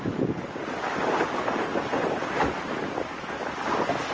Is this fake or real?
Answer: real